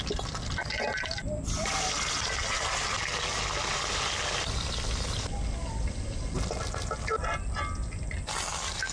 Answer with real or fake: real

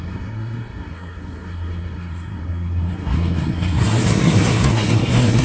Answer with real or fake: fake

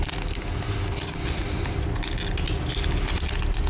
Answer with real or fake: real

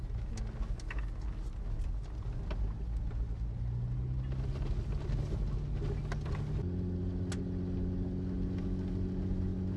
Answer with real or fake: real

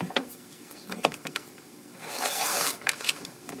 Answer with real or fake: fake